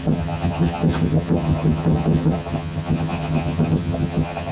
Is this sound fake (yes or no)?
yes